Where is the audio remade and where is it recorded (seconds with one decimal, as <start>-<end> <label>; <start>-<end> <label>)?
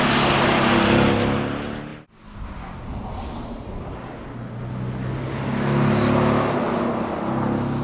0.0-7.8 recorded